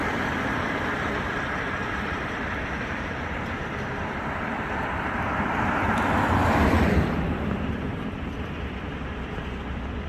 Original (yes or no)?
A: no